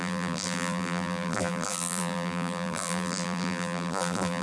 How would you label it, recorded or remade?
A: remade